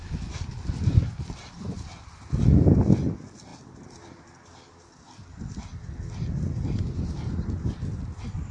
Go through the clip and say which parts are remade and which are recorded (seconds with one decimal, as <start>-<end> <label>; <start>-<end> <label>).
0.0-8.5 recorded